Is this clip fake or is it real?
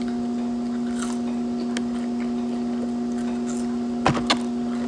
real